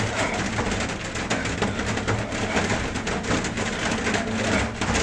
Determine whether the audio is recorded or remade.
recorded